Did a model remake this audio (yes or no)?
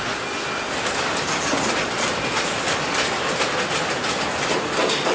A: no